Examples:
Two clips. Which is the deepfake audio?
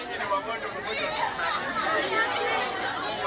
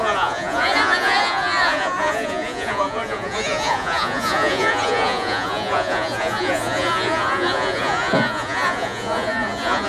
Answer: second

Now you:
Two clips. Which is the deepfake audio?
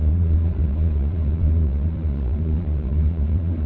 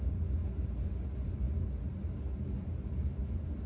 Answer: first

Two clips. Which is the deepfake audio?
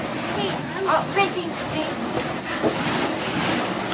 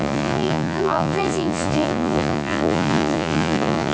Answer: second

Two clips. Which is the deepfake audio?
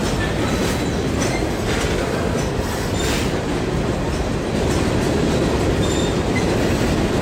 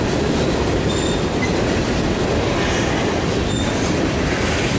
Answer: second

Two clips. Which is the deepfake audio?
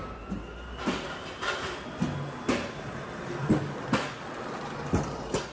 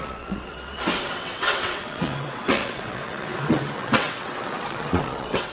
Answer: second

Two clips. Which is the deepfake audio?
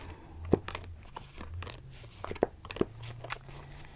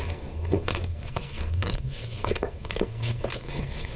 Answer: second